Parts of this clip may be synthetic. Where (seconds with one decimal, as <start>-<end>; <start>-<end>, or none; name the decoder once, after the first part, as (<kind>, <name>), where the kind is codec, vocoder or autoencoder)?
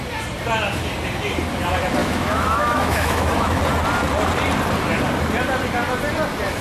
2.0-3.6 (autoencoder, DAC-VAE)